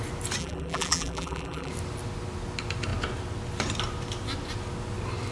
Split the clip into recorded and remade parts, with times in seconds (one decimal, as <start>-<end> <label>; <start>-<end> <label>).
0.0-0.4 recorded; 0.4-1.7 remade; 1.7-5.3 recorded